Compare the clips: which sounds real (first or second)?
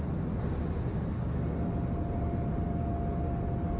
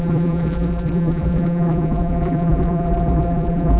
first